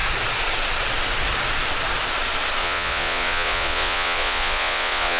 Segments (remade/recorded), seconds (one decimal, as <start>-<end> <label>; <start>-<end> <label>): 0.0-2.6 recorded; 2.6-5.2 remade